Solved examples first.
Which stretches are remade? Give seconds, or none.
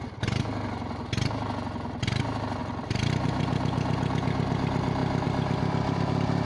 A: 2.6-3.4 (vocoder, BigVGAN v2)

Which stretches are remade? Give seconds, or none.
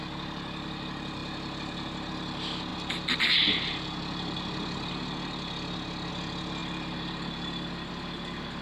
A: none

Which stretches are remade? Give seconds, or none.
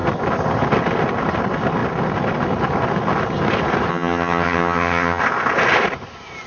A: 3.9-5.2 (vocoder, HiFi-GAN)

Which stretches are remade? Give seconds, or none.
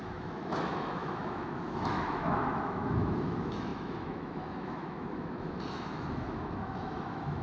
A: 0.0-7.4 (autoencoder, DAC-VAE)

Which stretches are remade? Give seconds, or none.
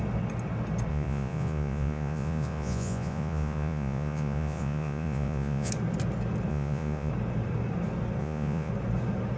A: 0.9-5.7 (vocoder, Vocos); 6.5-7.1; 8.2-8.7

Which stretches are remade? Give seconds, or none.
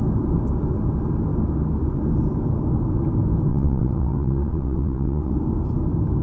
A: 3.5-5.3 (vocoder, WaveNeXt)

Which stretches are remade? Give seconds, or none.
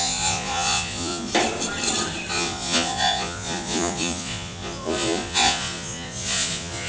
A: 0.0-1.3 (vocoder, Vocos); 2.3-6.9